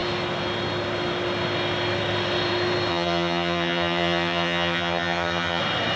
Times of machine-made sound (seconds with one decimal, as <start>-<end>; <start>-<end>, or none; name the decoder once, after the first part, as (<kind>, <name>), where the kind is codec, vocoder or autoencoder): 2.9-5.6 (vocoder, HiFi-GAN)